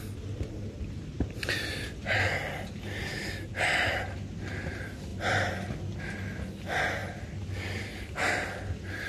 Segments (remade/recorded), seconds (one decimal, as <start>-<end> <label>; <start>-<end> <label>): 0.0-9.1 recorded